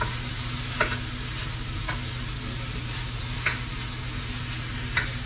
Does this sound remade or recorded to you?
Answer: recorded